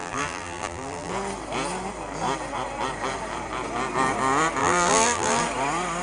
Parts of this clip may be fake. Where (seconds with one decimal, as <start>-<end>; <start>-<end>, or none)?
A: 0.0-1.1; 4.6-5.4